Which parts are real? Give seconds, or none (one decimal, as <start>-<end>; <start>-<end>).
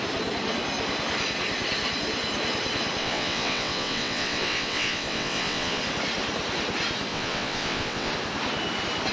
0.0-3.0; 5.8-7.1; 8.1-9.1